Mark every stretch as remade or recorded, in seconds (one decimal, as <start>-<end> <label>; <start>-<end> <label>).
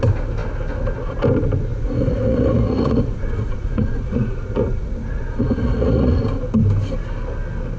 0.0-1.7 recorded; 1.7-6.2 remade; 6.2-7.8 recorded